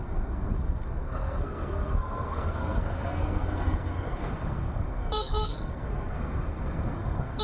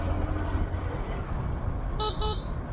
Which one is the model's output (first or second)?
first